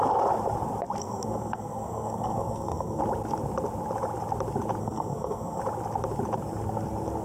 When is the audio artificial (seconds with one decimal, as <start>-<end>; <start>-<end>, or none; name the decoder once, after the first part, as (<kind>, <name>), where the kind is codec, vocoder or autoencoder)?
1.0-3.0 (codec, SNAC); 4.8-5.6